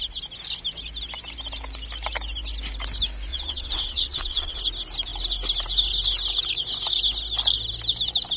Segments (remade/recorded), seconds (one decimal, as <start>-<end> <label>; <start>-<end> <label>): 0.0-3.3 recorded; 3.3-4.6 remade; 4.6-8.4 recorded